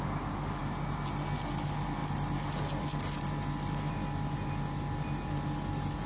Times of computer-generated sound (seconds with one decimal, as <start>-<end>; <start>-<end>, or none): none